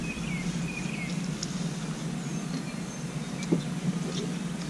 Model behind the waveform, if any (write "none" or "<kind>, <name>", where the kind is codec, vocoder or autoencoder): none